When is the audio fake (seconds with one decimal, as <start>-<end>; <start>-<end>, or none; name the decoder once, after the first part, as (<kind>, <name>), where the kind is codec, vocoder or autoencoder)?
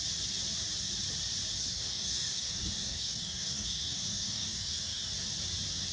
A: 1.6-5.1 (codec, DAC)